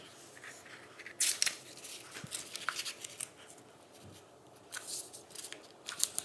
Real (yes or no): yes